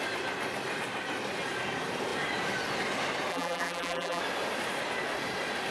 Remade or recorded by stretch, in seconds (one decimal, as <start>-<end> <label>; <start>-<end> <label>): 0.0-3.3 recorded; 3.3-4.2 remade; 4.2-5.7 recorded